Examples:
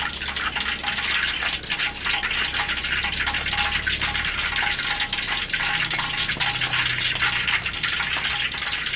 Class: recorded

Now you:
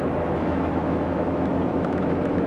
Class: remade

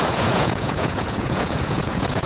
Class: remade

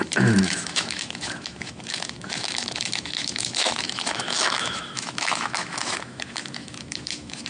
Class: remade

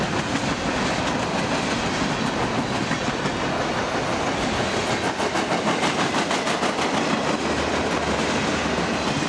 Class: recorded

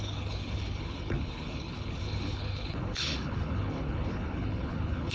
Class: remade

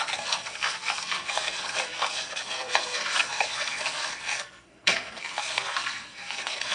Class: remade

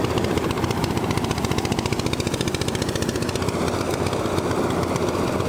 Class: recorded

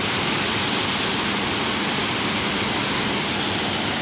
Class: recorded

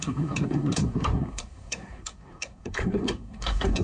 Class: remade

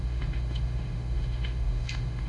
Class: remade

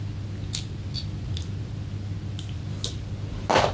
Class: recorded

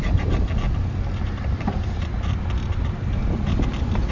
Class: remade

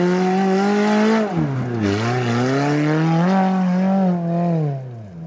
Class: recorded